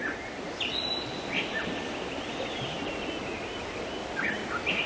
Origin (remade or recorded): recorded